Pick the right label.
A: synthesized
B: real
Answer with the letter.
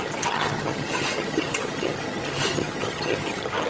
A